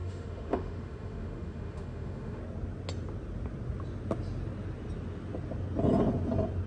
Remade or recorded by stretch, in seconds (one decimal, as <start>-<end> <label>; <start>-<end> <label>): 0.0-2.4 remade; 2.4-6.7 recorded